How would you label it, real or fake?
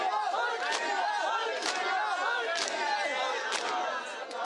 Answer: real